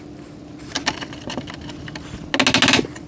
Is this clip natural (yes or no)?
yes